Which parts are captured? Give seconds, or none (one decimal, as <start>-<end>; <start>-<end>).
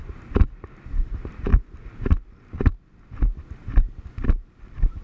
none